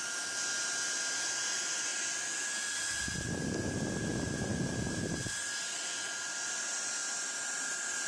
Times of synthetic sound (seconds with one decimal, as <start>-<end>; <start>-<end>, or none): 7.0-8.1